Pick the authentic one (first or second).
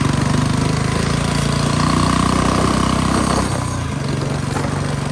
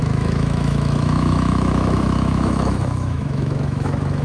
first